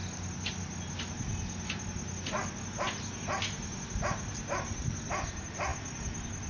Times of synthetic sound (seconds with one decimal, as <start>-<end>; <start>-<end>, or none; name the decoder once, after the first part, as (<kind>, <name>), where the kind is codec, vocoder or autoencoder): none